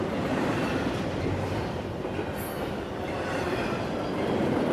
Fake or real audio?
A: fake